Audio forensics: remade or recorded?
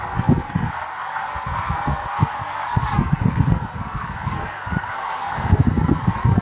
remade